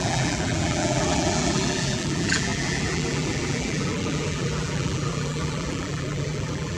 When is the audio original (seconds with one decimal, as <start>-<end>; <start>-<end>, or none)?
none